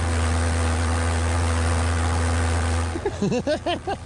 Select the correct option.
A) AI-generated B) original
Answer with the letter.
B